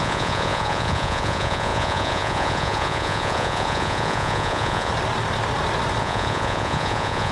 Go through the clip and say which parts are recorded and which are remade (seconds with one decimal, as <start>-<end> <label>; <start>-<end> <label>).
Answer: 0.0-4.9 remade; 4.9-6.0 recorded; 6.0-7.3 remade